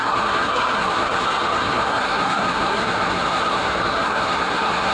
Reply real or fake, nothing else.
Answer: fake